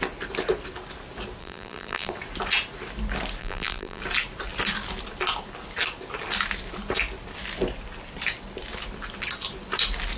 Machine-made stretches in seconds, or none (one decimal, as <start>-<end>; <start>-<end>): 1.4-2.1; 3.4-4.0